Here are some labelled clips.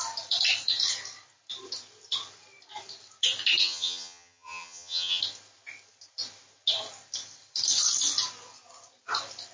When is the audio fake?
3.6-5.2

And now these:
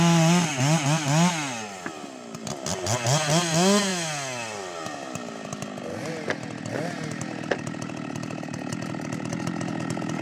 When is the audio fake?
none

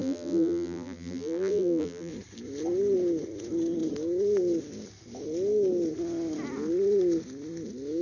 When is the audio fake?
0.0-2.1

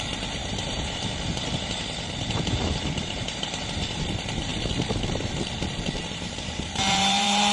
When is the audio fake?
0.0-4.5; 6.0-7.5